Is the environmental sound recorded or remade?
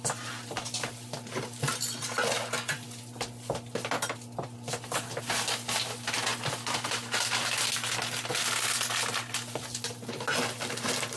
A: recorded